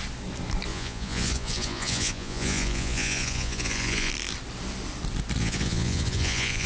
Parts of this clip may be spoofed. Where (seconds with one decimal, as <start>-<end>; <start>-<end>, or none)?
0.7-4.1; 5.4-6.7